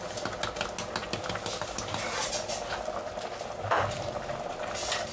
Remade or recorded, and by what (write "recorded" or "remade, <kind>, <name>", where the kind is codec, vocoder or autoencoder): recorded